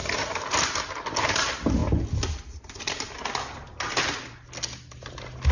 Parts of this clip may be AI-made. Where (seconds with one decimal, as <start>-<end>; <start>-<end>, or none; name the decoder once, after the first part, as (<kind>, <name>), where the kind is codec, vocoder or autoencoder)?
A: none